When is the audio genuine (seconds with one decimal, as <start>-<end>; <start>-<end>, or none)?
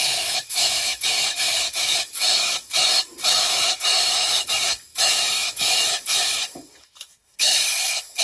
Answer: none